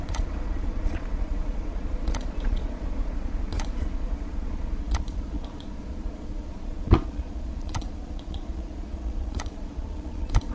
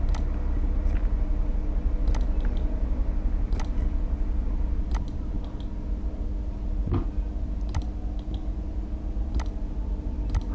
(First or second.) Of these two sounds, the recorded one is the second